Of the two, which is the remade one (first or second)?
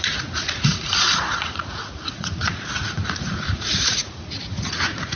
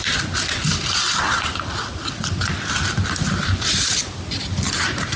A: first